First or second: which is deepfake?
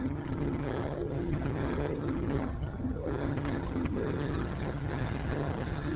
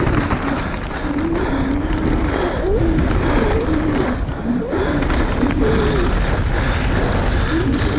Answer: first